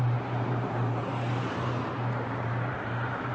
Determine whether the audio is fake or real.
fake